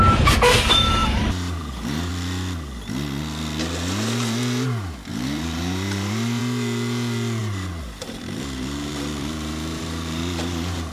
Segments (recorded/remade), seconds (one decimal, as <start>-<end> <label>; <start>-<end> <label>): 0.0-1.0 recorded; 1.0-2.1 remade; 2.1-5.1 recorded; 5.1-6.4 remade; 6.4-7.4 recorded; 7.4-10.9 remade